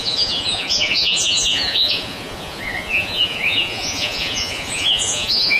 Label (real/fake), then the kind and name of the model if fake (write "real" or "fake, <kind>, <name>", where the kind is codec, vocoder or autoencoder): fake, vocoder, Vocos